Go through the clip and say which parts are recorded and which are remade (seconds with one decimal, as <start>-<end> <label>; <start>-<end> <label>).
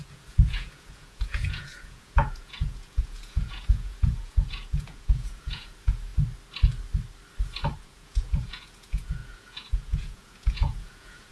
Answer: 0.0-6.1 remade; 6.1-7.8 recorded; 7.8-11.3 remade